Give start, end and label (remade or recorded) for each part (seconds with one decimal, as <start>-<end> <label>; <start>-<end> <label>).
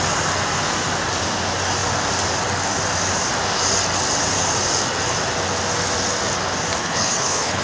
0.0-6.8 recorded; 6.8-7.6 remade